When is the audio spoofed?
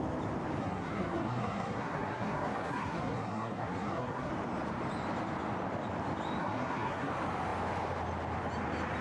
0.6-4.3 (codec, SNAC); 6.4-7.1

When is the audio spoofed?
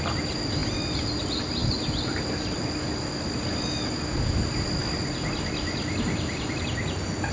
none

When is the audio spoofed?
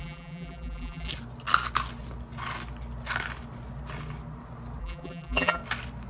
0.0-1.1 (vocoder, BigVGAN v2); 4.8-5.6